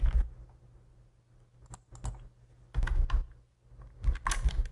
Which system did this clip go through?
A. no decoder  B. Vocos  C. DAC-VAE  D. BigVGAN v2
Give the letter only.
A